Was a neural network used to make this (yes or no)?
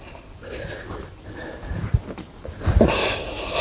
no